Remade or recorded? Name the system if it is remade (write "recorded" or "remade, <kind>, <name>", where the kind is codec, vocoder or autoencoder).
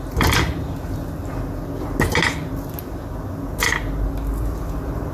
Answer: recorded